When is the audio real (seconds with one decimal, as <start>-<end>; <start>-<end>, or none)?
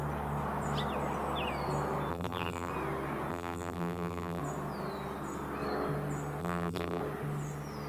0.0-2.1; 2.7-3.3; 4.4-6.4; 7.0-7.9